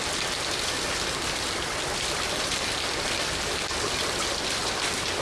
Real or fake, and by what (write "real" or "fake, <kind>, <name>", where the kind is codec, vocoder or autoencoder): real